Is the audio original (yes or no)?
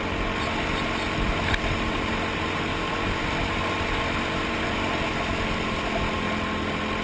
yes